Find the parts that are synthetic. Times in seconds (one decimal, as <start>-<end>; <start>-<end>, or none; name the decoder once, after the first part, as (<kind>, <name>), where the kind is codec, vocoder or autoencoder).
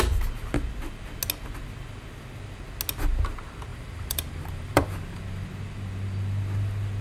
3.7-5.2 (vocoder, BigVGAN v2)